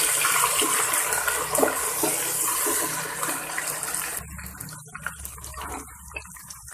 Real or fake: real